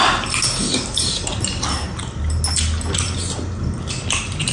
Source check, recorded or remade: recorded